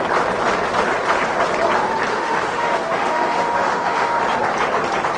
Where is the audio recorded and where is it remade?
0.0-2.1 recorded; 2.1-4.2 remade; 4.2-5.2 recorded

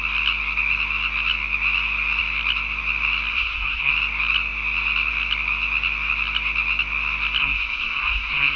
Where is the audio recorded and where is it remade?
0.0-3.3 recorded; 3.3-3.9 remade; 3.9-7.4 recorded; 7.4-8.6 remade

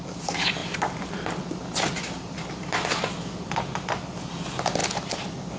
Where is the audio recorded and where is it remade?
0.0-0.6 recorded; 0.6-3.4 remade; 3.4-4.8 recorded; 4.8-5.6 remade

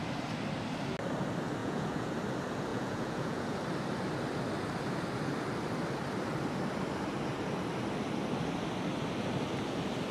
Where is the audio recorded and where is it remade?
0.0-1.6 recorded; 1.6-2.2 remade; 2.2-2.7 recorded; 2.7-3.6 remade; 3.6-10.1 recorded

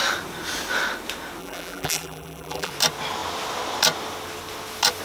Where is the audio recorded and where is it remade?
0.0-1.4 recorded; 1.4-2.7 remade; 2.7-5.0 recorded

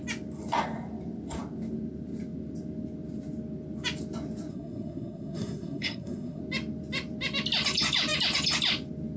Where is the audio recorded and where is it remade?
0.0-4.5 recorded; 4.5-6.4 remade; 6.4-9.2 recorded